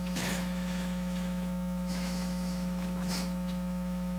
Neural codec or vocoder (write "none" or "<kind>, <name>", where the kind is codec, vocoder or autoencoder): autoencoder, DAC-VAE